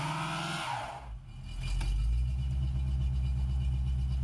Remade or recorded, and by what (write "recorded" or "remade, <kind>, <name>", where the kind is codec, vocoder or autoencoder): recorded